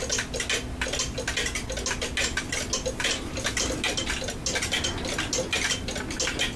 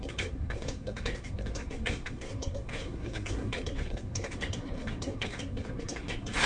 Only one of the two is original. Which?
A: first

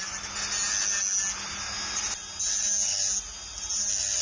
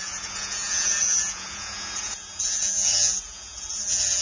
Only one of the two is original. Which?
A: first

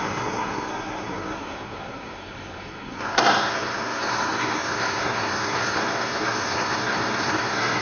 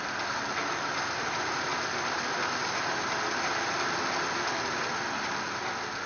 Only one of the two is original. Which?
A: second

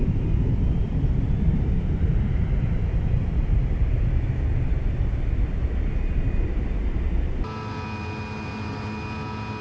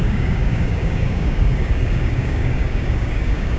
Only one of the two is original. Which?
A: first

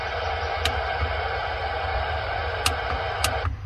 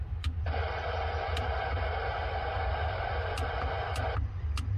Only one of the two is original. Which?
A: first